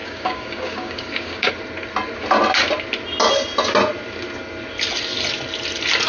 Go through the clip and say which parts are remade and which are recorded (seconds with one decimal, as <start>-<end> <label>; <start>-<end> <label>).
0.0-1.5 remade; 1.5-6.1 recorded